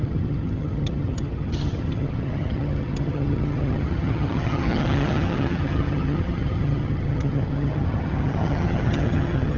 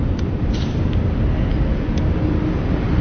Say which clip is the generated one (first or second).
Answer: first